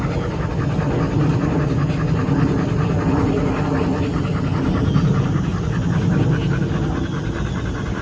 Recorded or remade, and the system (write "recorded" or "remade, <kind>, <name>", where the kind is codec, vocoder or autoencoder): recorded